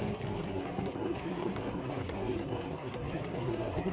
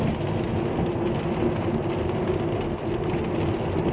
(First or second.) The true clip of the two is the second